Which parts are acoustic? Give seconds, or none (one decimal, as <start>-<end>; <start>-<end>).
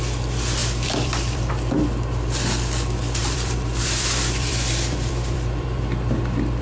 0.0-0.6; 1.5-3.2